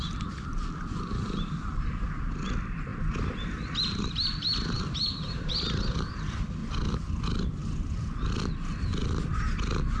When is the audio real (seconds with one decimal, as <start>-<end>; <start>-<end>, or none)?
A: 2.9-3.8; 6.6-7.1; 7.6-8.3